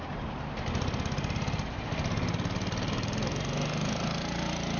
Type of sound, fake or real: real